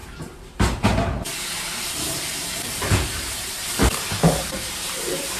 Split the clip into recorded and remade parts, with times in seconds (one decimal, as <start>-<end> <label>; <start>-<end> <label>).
0.0-0.8 recorded; 0.8-5.4 remade